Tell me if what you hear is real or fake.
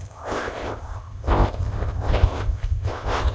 fake